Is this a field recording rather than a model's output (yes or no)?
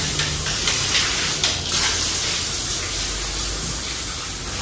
yes